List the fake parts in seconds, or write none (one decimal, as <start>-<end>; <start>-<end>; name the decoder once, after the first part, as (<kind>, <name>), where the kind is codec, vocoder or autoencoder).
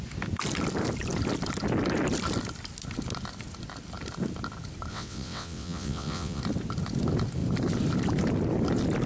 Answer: 4.9-6.4 (vocoder, WaveNeXt)